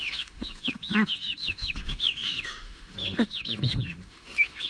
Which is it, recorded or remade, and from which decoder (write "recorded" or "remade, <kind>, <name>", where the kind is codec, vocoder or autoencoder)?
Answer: remade, autoencoder, DAC-VAE